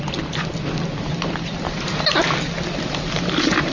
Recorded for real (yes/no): yes